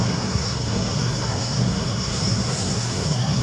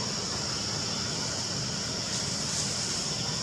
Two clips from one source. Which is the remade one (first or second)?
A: first